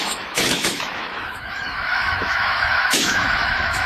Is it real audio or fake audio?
fake